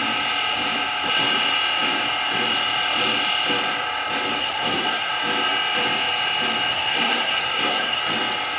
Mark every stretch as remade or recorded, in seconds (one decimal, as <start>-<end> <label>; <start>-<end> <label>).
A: 0.0-4.4 recorded; 4.4-5.1 remade; 5.1-6.7 recorded; 6.7-8.0 remade; 8.0-8.6 recorded